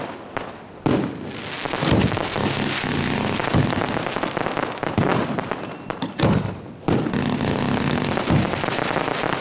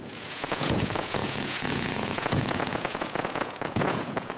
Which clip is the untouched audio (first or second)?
first